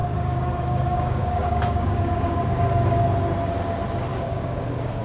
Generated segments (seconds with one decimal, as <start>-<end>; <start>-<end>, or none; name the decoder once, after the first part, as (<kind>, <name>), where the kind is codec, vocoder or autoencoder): 0.0-3.0 (codec, DAC); 4.1-5.0